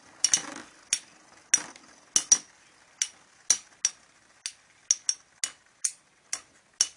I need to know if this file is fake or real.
real